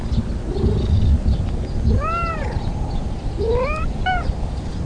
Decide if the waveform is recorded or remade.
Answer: recorded